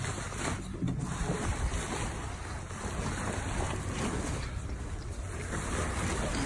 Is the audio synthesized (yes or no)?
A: no